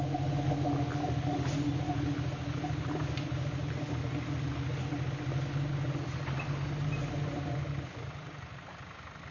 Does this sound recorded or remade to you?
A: recorded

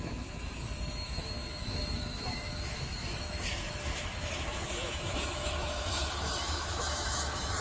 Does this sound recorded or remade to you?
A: remade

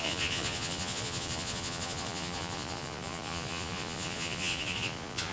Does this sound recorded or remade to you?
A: remade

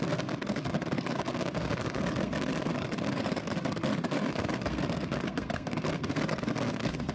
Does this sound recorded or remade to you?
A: remade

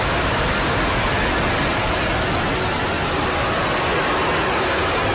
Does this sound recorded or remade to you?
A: recorded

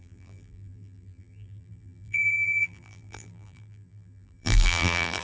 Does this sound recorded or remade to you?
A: remade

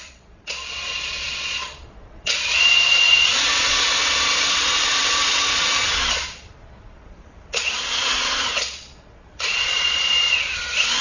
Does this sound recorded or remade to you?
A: remade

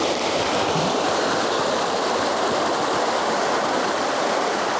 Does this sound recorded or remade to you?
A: recorded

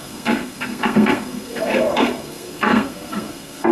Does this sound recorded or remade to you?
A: remade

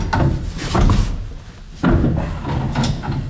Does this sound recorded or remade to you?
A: recorded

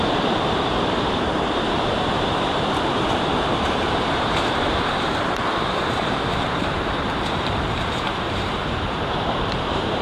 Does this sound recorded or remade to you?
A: remade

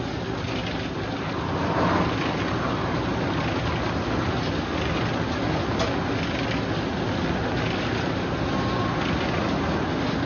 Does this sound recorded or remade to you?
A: recorded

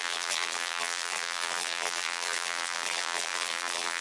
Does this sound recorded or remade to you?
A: remade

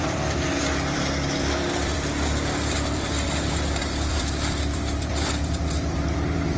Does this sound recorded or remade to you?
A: remade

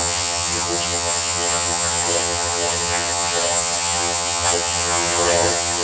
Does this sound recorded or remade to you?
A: remade